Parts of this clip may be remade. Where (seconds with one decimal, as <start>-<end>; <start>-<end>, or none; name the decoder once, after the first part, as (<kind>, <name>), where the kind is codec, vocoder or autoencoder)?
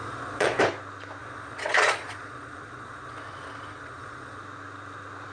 0.0-0.6 (vocoder, Vocos); 1.2-4.4